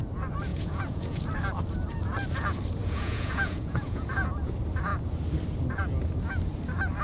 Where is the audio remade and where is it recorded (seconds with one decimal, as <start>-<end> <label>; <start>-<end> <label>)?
0.0-0.5 recorded; 0.5-1.2 remade; 1.2-2.8 recorded; 2.8-4.5 remade; 4.5-7.0 recorded